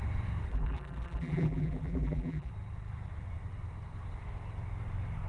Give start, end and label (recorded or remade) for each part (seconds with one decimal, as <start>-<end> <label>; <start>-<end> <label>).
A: 0.0-0.5 recorded; 0.5-2.5 remade; 2.5-5.3 recorded